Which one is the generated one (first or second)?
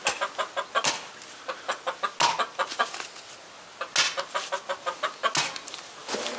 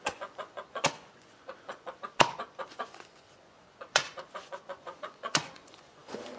second